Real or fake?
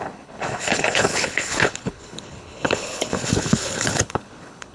fake